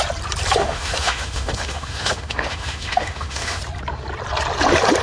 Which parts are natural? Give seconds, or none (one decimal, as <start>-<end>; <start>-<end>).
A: 0.0-0.6; 3.6-5.0